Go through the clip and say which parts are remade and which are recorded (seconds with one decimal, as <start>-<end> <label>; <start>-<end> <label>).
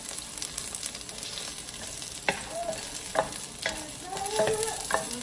0.0-5.2 recorded